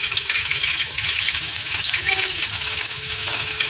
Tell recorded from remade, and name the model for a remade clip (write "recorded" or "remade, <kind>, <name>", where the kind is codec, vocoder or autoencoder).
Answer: remade, autoencoder, DAC-VAE